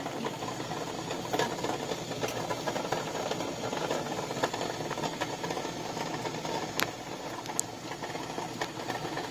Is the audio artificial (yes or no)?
no